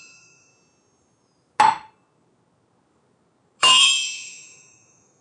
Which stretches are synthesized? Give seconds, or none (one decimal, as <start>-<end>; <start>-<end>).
0.0-0.5; 3.6-5.2